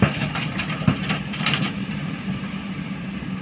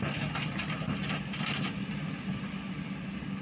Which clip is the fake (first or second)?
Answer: first